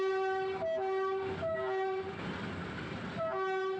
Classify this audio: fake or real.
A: real